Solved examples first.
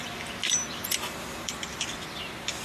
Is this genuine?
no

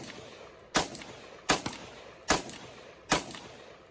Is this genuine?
yes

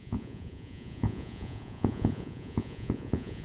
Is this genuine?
no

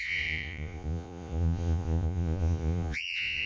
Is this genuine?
no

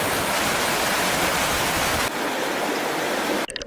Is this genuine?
yes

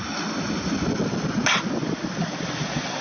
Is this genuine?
yes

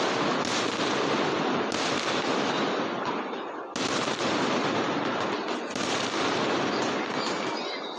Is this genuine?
yes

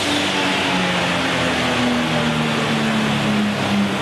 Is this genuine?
yes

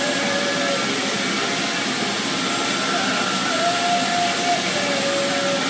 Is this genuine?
yes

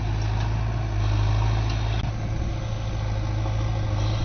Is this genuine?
yes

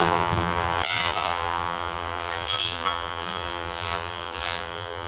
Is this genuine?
no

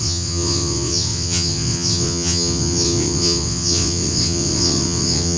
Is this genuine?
no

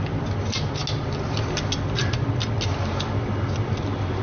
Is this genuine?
yes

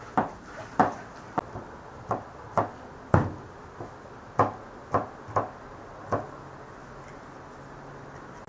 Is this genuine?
yes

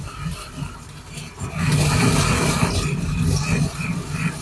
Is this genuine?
yes